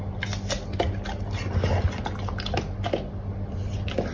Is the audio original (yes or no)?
yes